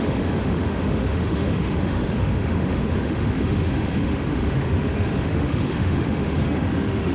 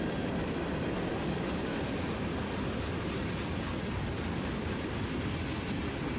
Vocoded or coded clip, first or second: first